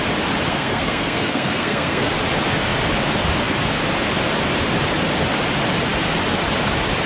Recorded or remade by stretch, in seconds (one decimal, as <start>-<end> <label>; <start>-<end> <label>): 0.0-0.5 recorded; 0.5-2.1 remade; 2.1-7.1 recorded